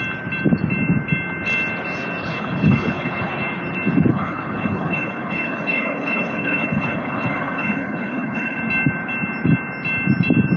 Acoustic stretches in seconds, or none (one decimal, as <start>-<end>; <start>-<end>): 0.0-2.2; 3.3-4.1; 8.6-10.6